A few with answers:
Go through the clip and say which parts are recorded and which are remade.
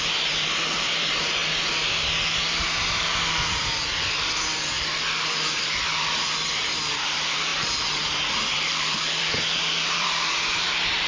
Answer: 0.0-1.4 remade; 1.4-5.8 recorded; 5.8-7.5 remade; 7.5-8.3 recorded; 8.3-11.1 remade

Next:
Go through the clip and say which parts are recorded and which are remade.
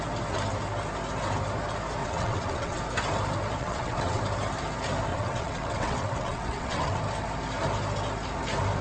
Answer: 0.0-2.0 recorded; 2.0-2.8 remade; 2.8-3.6 recorded; 3.6-4.2 remade; 4.2-5.1 recorded; 5.1-7.0 remade; 7.0-8.8 recorded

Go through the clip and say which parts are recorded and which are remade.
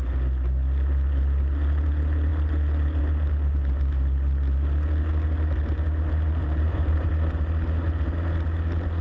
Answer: 0.0-6.4 recorded; 6.4-7.1 remade; 7.1-9.0 recorded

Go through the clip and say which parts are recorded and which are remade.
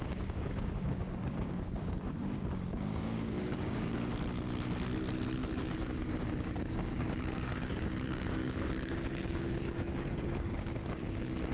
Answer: 0.0-4.1 remade; 4.1-5.4 recorded; 5.4-11.5 remade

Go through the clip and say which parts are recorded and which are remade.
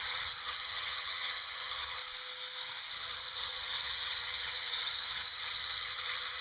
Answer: 0.0-2.0 remade; 2.0-2.9 recorded; 2.9-6.4 remade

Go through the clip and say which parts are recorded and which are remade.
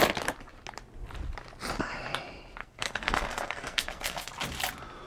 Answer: 0.0-2.6 recorded; 2.6-4.3 remade; 4.3-5.1 recorded